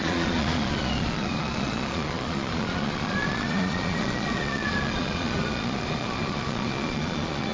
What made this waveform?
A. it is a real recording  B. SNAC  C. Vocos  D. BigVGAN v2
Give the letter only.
C